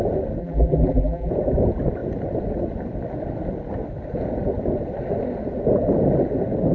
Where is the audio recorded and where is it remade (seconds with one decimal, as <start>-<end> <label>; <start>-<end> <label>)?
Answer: 0.0-0.4 recorded; 0.4-1.3 remade; 1.3-6.7 recorded